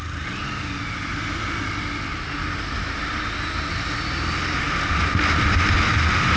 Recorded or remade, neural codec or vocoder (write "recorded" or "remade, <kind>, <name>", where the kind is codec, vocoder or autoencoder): recorded